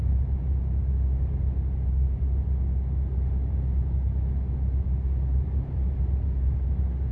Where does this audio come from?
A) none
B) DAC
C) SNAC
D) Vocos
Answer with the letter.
A